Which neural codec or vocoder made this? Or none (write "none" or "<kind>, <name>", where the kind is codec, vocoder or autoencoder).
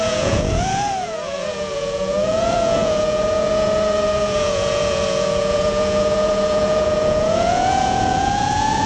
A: vocoder, Vocos